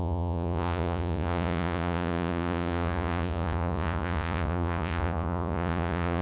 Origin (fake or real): fake